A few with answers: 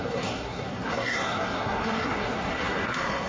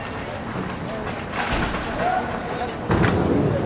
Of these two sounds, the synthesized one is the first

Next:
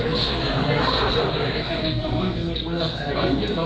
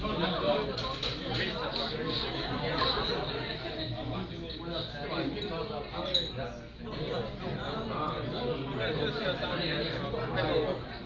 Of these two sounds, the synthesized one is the first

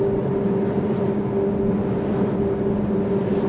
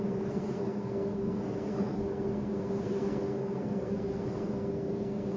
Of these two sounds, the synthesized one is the second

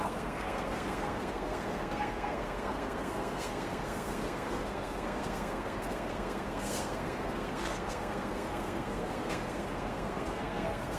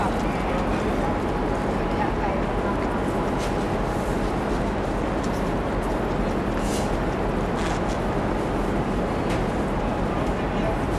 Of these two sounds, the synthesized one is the first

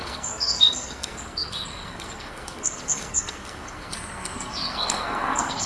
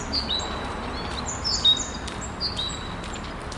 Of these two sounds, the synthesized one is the first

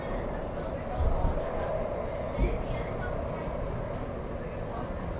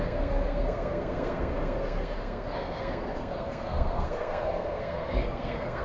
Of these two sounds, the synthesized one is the second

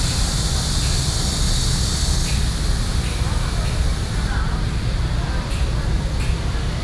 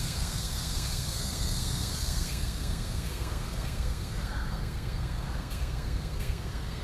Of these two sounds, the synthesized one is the second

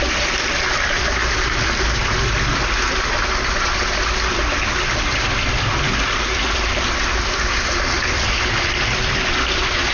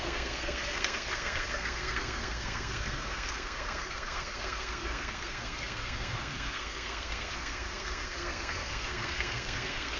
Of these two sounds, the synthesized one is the second